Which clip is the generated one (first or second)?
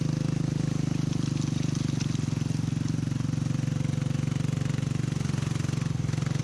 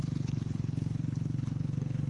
second